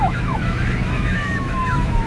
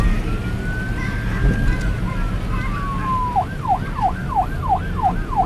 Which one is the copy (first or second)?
first